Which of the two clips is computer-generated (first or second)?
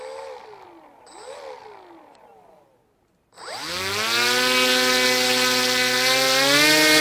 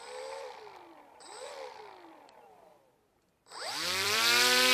second